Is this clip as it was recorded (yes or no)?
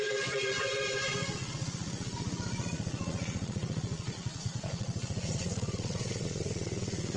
no